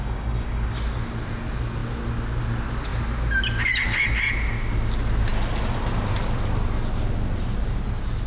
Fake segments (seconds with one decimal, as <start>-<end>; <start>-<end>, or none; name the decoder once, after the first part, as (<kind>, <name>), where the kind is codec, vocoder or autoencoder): 0.0-0.7 (codec, DAC)

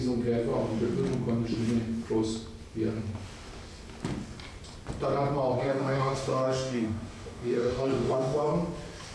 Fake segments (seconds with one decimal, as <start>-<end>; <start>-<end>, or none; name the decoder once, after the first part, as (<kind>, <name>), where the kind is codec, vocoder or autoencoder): 5.6-8.5 (codec, DAC)

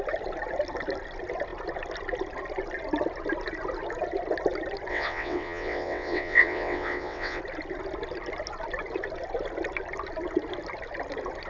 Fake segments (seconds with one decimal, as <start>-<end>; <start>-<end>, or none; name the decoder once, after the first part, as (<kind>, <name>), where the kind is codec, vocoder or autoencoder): 4.9-7.4 (vocoder, WaveNeXt)

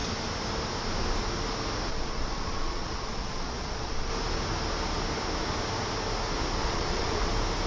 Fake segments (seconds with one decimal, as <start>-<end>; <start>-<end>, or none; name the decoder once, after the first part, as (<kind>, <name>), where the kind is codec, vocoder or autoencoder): 1.9-4.1 (vocoder, Vocos); 6.6-7.3

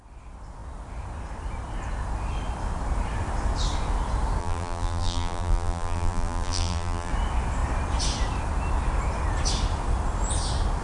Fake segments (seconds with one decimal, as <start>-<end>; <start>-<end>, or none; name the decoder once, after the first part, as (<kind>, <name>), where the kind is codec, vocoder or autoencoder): 4.4-7.1 (vocoder, BigVGAN v2)

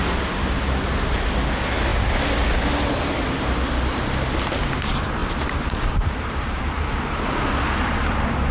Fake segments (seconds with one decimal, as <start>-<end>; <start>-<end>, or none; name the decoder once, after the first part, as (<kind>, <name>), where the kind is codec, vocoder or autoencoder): 5.2-8.5 (vocoder, BigVGAN v2)

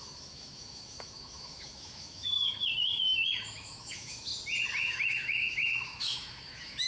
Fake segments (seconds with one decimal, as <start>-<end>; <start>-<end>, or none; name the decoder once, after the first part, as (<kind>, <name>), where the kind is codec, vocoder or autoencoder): 0.0-4.3 (autoencoder, DAC-VAE); 4.8-6.9